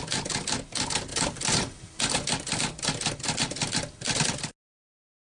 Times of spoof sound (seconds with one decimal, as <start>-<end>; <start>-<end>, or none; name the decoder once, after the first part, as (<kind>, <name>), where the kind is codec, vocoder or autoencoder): 1.1-2.0 (vocoder, BigVGAN v2)